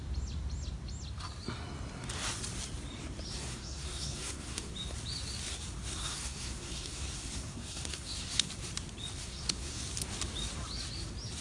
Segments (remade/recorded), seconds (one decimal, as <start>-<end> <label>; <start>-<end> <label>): 0.0-3.4 recorded; 3.4-4.7 remade; 4.7-5.8 recorded; 5.8-8.5 remade; 8.5-9.2 recorded; 9.2-9.8 remade; 9.8-11.4 recorded